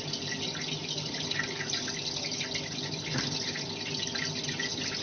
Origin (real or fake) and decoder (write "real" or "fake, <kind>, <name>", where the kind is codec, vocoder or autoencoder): real